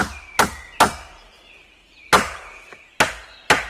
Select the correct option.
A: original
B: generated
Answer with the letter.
A